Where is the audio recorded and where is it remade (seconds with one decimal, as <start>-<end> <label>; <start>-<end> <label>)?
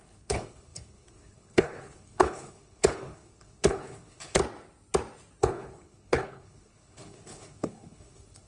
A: 0.0-4.4 remade; 4.4-5.4 recorded; 5.4-8.5 remade